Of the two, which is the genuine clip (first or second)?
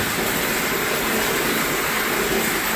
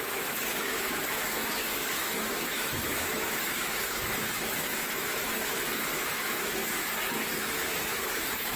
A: first